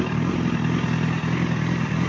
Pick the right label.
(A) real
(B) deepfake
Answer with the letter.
A